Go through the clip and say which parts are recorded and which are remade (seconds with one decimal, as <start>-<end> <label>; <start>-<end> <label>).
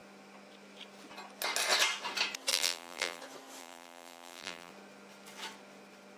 0.0-2.5 recorded; 2.5-3.2 remade; 3.2-3.6 recorded; 3.6-4.7 remade; 4.7-6.2 recorded